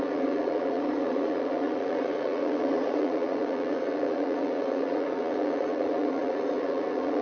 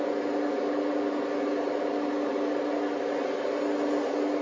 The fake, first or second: first